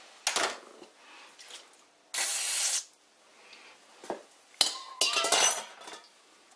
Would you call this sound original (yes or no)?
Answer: yes